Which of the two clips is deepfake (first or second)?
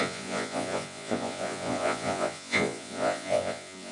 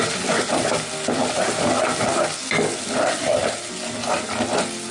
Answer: first